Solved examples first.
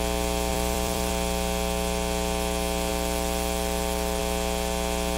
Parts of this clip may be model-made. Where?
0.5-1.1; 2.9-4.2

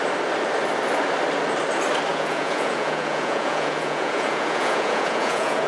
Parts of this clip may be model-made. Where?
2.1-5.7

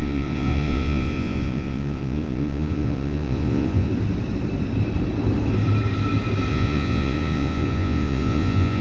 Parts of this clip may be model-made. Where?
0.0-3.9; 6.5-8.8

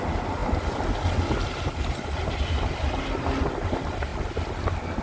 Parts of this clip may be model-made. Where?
none

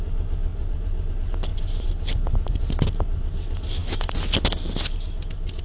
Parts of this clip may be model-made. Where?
0.5-1.1; 1.5-2.6

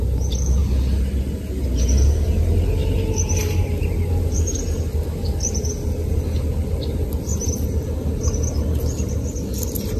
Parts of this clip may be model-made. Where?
none

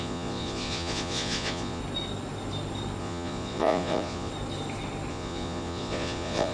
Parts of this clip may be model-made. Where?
0.0-1.8; 3.0-4.3; 5.1-6.5

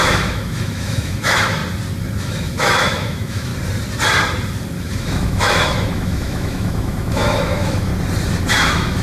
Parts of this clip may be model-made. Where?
0.0-1.6; 2.2-3.5; 4.8-7.9; 8.5-9.0